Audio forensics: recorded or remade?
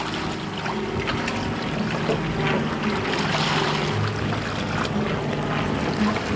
recorded